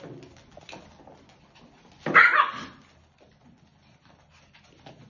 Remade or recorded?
recorded